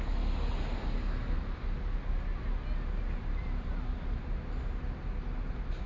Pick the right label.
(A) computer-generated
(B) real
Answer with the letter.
B